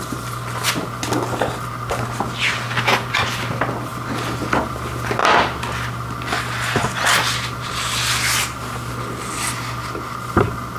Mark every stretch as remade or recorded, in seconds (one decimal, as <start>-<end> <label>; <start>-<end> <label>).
0.0-10.8 recorded